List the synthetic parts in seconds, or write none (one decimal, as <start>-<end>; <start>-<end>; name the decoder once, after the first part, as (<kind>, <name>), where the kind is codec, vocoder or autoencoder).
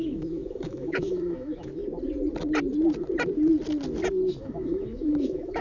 0.0-1.8 (autoencoder, DAC-VAE); 4.4-5.6